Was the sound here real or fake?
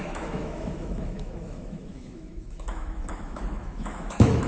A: fake